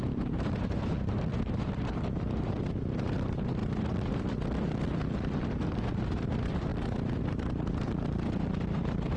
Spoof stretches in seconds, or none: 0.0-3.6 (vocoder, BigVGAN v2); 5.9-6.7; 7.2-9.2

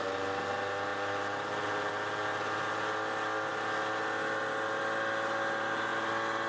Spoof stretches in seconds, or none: none

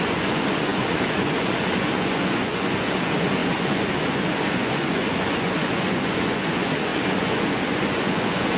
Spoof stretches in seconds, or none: 0.0-8.6 (vocoder, Vocos)

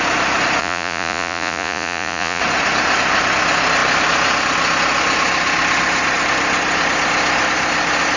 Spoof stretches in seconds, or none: 0.6-2.4 (vocoder, Vocos)

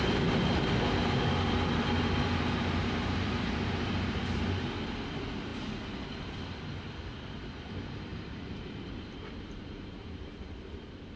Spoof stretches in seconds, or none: 2.8-4.2 (vocoder, BigVGAN v2); 8.1-10.4